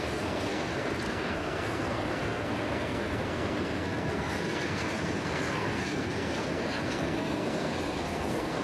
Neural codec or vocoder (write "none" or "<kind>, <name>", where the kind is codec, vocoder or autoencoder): codec, SNAC